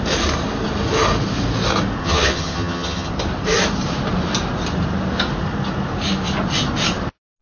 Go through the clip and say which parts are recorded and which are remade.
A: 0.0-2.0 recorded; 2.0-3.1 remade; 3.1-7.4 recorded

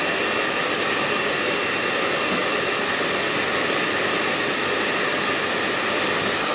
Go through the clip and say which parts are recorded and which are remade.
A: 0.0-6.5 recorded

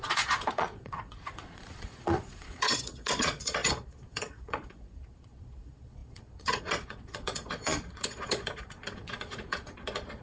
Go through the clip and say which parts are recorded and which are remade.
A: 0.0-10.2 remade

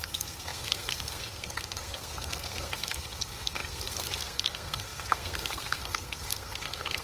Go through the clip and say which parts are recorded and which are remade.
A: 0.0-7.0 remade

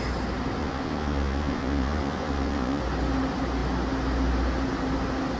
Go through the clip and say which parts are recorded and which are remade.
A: 0.0-0.6 recorded; 0.6-2.8 remade; 2.8-5.4 recorded

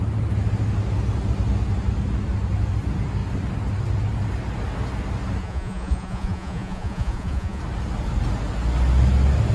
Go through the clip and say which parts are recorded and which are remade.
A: 0.0-5.4 recorded; 5.4-7.6 remade; 7.6-9.5 recorded

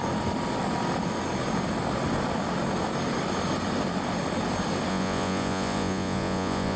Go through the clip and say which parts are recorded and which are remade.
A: 0.0-4.9 recorded; 4.9-6.8 remade